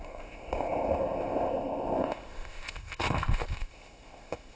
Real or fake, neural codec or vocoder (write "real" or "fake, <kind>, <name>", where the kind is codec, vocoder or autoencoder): fake, codec, ZipCodec